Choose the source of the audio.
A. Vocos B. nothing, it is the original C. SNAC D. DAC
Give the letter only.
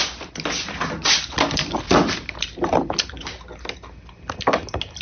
B